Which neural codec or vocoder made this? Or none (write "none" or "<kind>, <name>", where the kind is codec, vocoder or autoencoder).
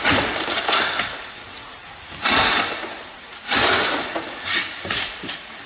vocoder, Vocos